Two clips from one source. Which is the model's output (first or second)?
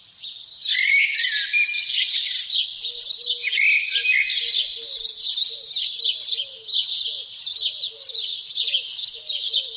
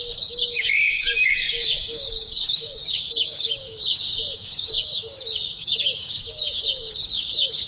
second